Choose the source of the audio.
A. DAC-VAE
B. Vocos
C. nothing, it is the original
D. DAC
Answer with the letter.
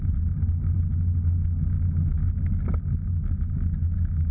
C